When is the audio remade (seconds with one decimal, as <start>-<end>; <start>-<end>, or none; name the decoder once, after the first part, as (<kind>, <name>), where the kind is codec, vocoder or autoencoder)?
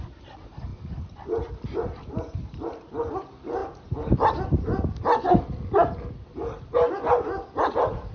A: 0.0-3.6 (vocoder, BigVGAN v2); 6.1-8.1